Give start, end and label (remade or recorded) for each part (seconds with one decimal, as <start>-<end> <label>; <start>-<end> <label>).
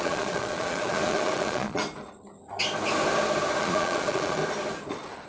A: 0.0-1.8 remade; 1.8-3.6 recorded; 3.6-4.4 remade; 4.4-5.3 recorded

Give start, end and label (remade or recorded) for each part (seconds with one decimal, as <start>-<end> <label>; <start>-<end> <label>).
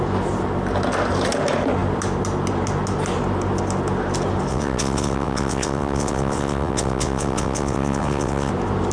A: 0.0-4.5 recorded; 4.5-8.5 remade; 8.5-8.9 recorded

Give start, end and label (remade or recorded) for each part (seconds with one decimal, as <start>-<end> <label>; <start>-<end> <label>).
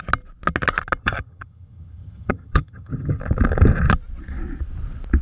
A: 0.0-1.0 recorded; 1.0-3.2 remade; 3.2-5.2 recorded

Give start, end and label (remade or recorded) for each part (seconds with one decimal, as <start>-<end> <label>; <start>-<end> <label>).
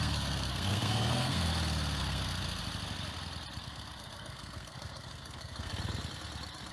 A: 0.0-1.5 remade; 1.5-2.0 recorded; 2.0-2.6 remade; 2.6-3.6 recorded; 3.6-5.7 remade; 5.7-6.7 recorded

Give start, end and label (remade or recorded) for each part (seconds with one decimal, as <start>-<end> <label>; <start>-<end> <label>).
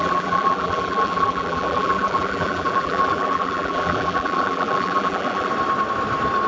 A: 0.0-5.5 remade; 5.5-6.5 recorded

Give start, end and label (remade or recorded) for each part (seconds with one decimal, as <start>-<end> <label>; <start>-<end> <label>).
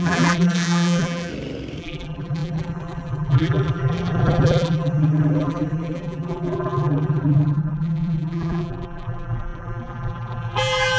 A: 0.0-1.3 remade; 1.3-1.8 recorded; 1.8-11.0 remade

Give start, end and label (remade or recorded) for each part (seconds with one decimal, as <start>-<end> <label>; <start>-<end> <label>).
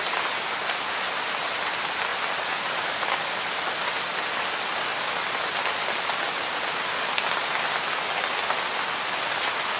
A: 0.0-9.8 recorded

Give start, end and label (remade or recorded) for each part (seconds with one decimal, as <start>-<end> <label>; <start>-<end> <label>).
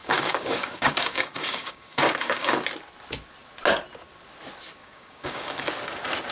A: 0.0-2.6 remade; 2.6-4.8 recorded; 4.8-5.7 remade; 5.7-6.3 recorded